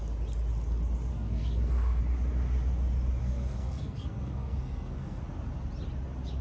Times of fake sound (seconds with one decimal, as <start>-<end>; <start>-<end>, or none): 1.1-2.0; 3.2-5.2